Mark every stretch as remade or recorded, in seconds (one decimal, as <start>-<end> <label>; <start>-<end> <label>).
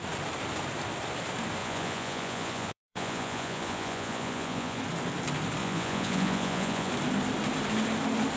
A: 0.0-1.6 recorded; 1.6-4.8 remade; 4.8-5.6 recorded; 5.6-6.9 remade; 6.9-8.4 recorded